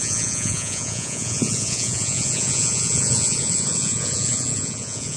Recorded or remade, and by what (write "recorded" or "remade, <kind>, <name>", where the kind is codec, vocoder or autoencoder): remade, vocoder, Vocos